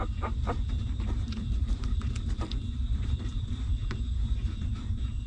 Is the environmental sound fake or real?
fake